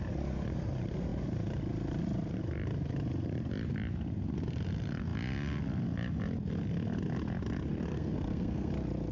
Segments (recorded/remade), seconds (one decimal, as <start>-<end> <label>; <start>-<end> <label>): 0.0-7.9 recorded; 7.9-8.7 remade; 8.7-9.1 recorded